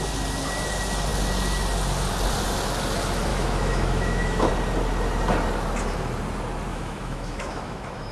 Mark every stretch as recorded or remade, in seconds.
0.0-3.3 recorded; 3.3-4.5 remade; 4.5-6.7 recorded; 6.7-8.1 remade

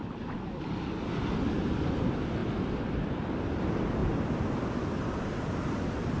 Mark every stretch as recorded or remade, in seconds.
0.0-0.9 remade; 0.9-2.4 recorded; 2.4-3.6 remade; 3.6-6.2 recorded

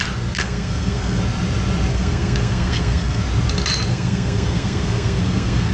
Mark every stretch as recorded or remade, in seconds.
0.0-0.4 recorded; 0.4-1.2 remade; 1.2-1.9 recorded; 1.9-3.2 remade; 3.2-3.9 recorded; 3.9-5.7 remade

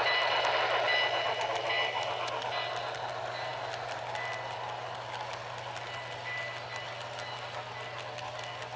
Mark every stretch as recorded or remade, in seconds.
0.0-8.8 recorded

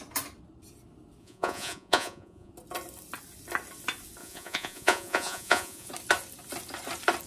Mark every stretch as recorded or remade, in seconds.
0.0-1.2 recorded; 1.2-2.5 remade; 2.5-4.2 recorded; 4.2-5.9 remade; 5.9-7.3 recorded

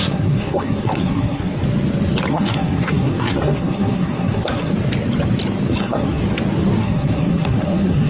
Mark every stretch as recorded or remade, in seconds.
0.0-1.5 remade; 1.5-2.3 recorded; 2.3-4.7 remade; 4.7-5.8 recorded; 5.8-6.2 remade; 6.2-6.8 recorded; 6.8-8.1 remade

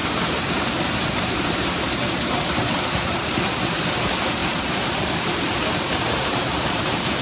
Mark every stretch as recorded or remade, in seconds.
0.0-7.2 remade